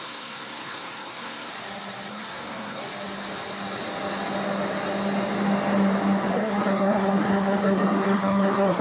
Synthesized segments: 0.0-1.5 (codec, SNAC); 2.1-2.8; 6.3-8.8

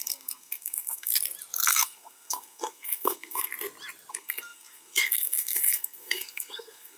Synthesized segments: 0.0-1.1 (codec, SNAC); 1.7-3.5; 4.1-7.0